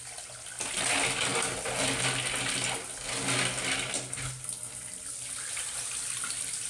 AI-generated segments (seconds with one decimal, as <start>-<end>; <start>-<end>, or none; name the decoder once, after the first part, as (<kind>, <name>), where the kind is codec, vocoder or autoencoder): none